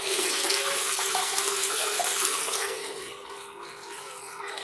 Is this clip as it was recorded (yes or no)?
no